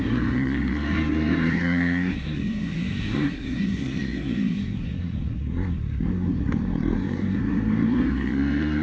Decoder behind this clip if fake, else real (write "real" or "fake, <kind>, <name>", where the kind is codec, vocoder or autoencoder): fake, codec, SNAC